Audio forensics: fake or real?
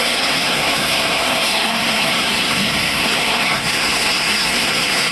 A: fake